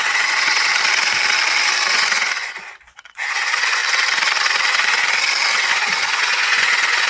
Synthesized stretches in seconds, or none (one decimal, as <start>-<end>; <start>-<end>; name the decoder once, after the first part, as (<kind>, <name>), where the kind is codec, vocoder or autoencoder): 0.0-0.7 (vocoder, Vocos); 1.9-3.8; 5.7-7.1